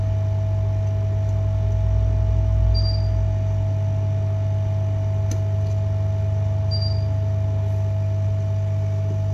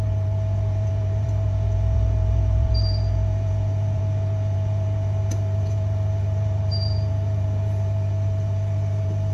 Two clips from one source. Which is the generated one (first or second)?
second